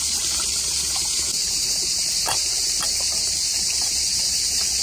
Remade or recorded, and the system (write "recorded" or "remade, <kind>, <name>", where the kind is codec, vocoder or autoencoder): remade, vocoder, BigVGAN v2